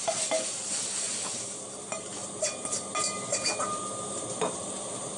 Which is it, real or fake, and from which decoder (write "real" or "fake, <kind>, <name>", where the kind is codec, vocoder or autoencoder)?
real